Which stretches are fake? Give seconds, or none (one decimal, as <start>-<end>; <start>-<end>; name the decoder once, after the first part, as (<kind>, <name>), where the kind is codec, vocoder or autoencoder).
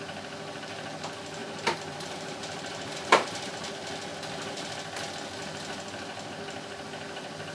1.4-3.5 (vocoder, BigVGAN v2)